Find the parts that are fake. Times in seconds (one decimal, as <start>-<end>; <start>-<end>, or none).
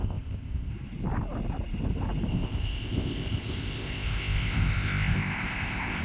0.0-0.7; 2.3-6.0